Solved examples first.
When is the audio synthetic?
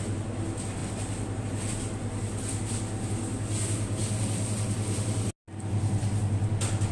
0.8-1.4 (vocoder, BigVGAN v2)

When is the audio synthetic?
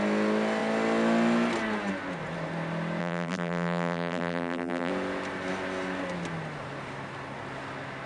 3.0-4.9 (vocoder, BigVGAN v2)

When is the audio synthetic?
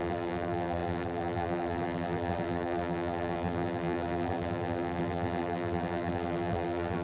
0.0-7.0 (vocoder, BigVGAN v2)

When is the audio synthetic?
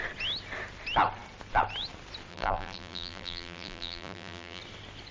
2.3-4.6 (vocoder, BigVGAN v2)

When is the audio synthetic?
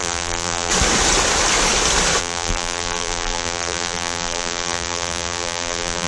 0.0-0.7 (vocoder, BigVGAN v2); 2.2-6.1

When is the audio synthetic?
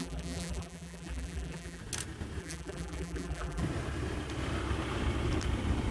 0.0-1.8 (vocoder, BigVGAN v2); 2.4-3.6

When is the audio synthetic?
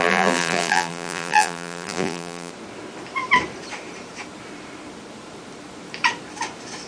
0.0-2.5 (vocoder, BigVGAN v2)